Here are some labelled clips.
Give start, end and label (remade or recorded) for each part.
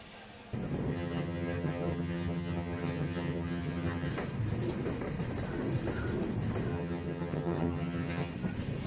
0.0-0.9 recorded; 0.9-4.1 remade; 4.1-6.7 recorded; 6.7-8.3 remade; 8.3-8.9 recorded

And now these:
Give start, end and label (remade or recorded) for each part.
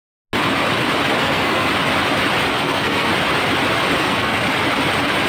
0.0-1.2 recorded; 1.2-1.7 remade; 1.7-2.5 recorded; 2.5-3.1 remade; 3.1-4.0 recorded; 4.0-4.4 remade; 4.4-5.3 recorded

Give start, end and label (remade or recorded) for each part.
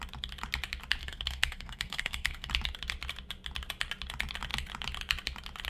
0.0-1.0 recorded; 1.0-2.5 remade; 2.5-5.7 recorded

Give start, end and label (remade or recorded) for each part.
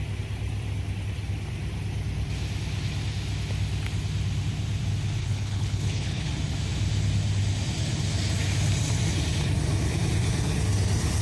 0.0-5.2 recorded; 5.2-6.3 remade; 6.3-11.2 recorded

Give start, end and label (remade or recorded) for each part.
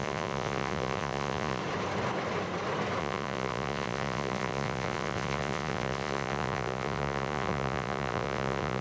0.0-1.6 remade; 1.6-3.0 recorded; 3.0-8.8 remade